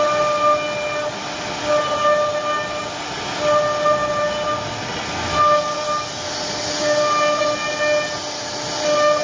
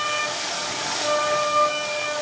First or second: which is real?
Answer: first